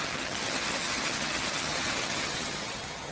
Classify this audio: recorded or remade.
remade